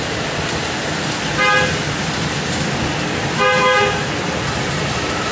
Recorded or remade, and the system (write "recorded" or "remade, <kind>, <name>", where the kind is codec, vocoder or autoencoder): recorded